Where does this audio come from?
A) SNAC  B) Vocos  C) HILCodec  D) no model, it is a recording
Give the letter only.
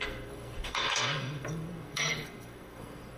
A